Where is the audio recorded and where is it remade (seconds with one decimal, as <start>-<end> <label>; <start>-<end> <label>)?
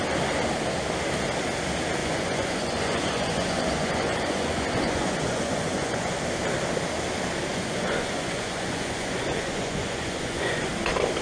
0.0-2.0 recorded; 2.0-6.2 remade; 6.2-7.5 recorded; 7.5-10.7 remade; 10.7-11.2 recorded